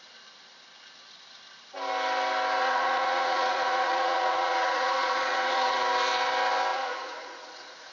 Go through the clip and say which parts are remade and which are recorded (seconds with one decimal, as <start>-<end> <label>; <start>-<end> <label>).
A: 0.0-2.6 recorded; 2.6-5.8 remade; 5.8-6.7 recorded; 6.7-7.9 remade